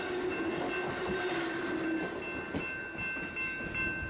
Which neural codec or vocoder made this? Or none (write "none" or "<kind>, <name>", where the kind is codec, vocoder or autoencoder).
none